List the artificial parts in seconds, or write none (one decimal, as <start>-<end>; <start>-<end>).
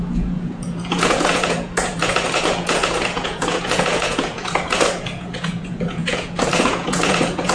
0.0-7.5